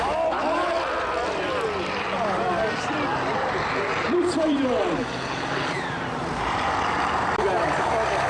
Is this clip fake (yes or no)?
yes